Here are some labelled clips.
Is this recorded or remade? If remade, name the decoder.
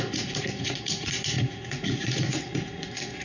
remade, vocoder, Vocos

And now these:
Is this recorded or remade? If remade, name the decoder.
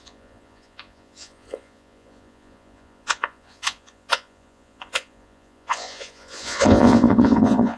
remade, vocoder, Vocos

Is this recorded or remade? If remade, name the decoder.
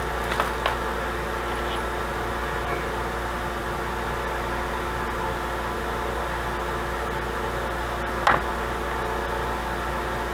recorded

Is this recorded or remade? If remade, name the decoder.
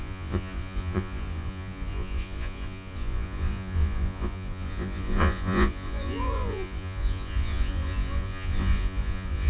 remade, vocoder, Vocos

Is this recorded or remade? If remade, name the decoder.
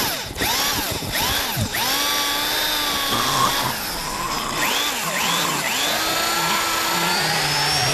recorded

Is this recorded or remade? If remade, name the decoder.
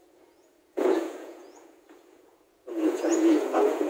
remade, vocoder, Vocos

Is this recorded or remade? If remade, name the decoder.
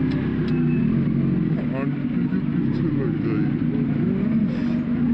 recorded